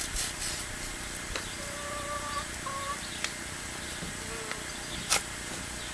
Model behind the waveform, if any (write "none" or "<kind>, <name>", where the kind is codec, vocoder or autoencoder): none